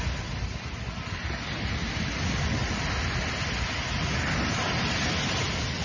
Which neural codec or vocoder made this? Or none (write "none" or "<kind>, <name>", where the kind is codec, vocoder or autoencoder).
none